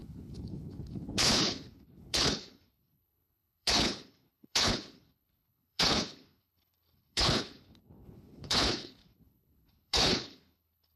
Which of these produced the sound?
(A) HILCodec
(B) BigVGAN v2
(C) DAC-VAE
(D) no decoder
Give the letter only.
A